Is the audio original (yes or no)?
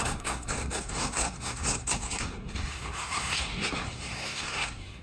no